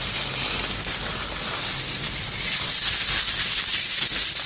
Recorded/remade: recorded